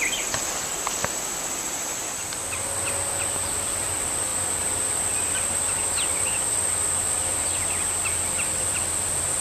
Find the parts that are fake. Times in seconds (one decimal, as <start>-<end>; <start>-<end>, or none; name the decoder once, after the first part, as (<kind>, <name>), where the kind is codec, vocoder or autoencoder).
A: none

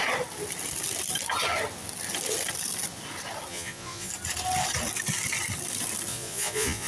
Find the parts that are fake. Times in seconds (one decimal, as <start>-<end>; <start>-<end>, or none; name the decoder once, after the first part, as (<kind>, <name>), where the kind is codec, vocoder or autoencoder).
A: 3.5-4.1 (vocoder, Vocos); 6.1-6.9

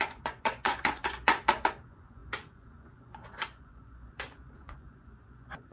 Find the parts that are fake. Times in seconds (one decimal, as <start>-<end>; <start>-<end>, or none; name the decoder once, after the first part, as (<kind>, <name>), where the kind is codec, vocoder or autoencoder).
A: 0.0-5.7 (vocoder, Vocos)

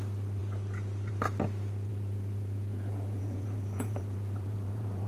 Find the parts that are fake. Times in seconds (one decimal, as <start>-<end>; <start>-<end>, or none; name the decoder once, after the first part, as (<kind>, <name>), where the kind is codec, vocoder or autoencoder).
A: 1.9-5.1 (vocoder, Vocos)

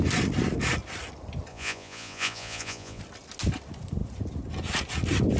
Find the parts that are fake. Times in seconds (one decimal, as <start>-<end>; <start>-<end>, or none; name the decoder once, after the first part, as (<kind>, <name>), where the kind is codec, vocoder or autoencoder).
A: 1.5-3.0 (vocoder, Vocos)

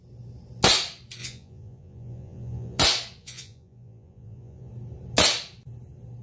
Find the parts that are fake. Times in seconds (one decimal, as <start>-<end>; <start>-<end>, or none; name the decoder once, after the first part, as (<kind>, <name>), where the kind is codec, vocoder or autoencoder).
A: 1.2-2.8 (vocoder, Vocos); 3.2-4.7